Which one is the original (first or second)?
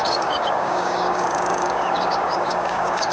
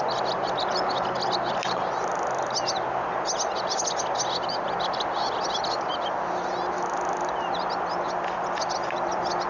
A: second